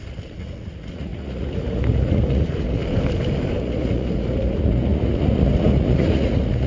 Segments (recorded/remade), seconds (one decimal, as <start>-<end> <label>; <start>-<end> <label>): 0.0-2.8 remade; 2.8-3.6 recorded; 3.6-6.7 remade

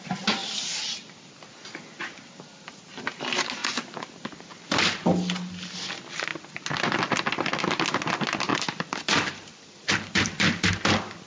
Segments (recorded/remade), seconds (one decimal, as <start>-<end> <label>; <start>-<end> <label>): 0.0-8.5 recorded; 8.5-10.7 remade; 10.7-11.3 recorded

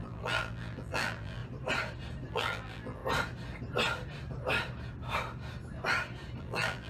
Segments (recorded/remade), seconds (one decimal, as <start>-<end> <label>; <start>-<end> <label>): 0.0-1.4 remade; 1.4-2.3 recorded; 2.3-3.0 remade; 3.0-6.4 recorded; 6.4-6.9 remade